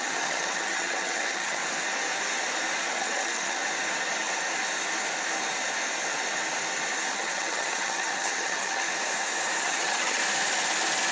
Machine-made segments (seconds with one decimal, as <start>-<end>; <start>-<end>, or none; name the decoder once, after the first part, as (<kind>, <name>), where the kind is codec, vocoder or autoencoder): 0.0-1.6 (vocoder, HiFi-GAN); 2.8-3.6; 7.1-8.9; 9.6-10.2